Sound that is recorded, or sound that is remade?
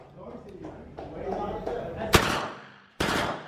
remade